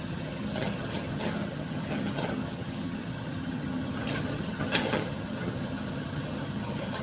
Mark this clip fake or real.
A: fake